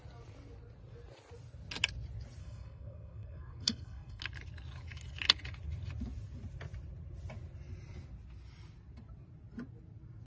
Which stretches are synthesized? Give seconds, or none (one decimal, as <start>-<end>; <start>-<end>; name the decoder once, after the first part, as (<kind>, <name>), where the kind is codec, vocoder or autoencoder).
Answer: 2.4-4.2 (codec, SNAC)